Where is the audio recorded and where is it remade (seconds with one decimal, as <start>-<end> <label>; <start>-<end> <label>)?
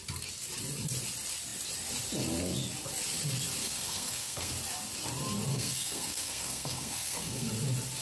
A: 0.0-3.6 recorded; 3.6-4.5 remade; 4.5-5.5 recorded; 5.5-7.5 remade; 7.5-8.0 recorded